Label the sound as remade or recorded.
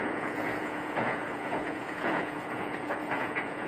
remade